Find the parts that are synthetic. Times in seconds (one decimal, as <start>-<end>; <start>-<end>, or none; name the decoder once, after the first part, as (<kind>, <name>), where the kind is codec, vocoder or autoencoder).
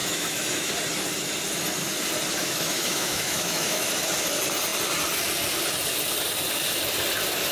0.0-0.7 (autoencoder, DAC-VAE); 2.4-3.9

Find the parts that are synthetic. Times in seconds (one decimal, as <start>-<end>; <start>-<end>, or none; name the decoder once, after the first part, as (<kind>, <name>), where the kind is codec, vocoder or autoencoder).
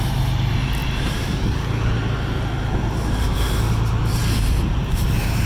none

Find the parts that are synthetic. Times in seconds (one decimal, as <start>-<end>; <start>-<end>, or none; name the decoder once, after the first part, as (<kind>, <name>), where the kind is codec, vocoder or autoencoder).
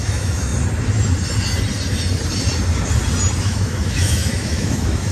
0.0-0.5 (autoencoder, DAC-VAE); 3.4-5.1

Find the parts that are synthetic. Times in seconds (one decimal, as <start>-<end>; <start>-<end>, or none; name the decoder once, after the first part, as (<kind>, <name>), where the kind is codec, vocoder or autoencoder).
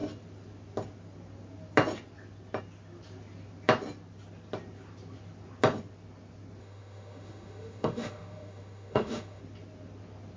6.6-9.4 (autoencoder, DAC-VAE)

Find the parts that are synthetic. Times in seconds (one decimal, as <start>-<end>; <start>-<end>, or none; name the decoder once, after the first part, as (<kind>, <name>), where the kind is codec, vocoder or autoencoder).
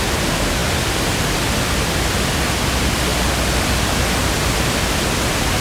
none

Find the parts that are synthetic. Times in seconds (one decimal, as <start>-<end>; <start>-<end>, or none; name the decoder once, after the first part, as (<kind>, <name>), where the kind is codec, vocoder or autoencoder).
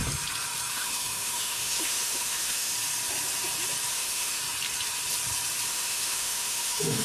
0.7-2.7 (autoencoder, DAC-VAE); 3.9-4.4; 5.7-7.0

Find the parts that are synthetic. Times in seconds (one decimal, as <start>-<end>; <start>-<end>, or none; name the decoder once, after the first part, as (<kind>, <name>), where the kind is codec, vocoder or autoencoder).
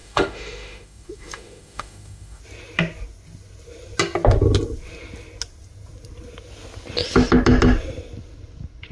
0.0-2.4 (autoencoder, DAC-VAE)